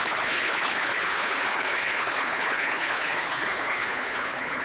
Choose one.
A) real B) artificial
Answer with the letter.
B